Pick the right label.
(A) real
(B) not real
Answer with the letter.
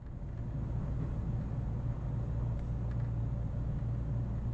A